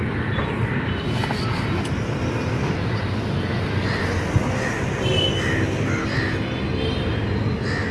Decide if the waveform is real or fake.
real